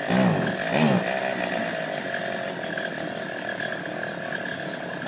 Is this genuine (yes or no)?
yes